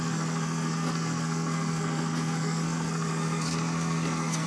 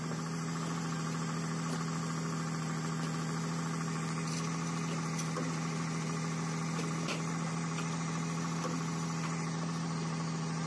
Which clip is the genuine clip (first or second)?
second